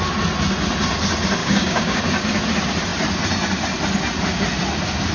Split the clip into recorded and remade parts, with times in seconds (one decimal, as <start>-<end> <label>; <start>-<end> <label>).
0.0-1.4 recorded; 1.4-2.0 remade; 2.0-5.1 recorded